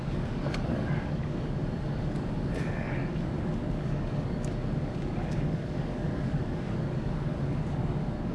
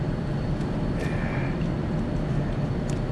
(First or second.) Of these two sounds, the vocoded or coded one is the first